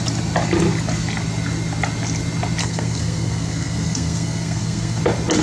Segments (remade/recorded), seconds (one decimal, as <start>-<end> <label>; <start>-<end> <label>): 0.0-2.6 recorded; 2.6-5.0 remade; 5.0-5.4 recorded